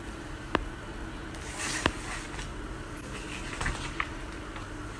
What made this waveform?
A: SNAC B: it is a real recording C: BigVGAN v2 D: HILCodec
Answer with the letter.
B